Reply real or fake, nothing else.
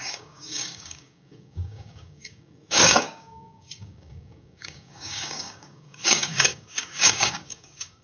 fake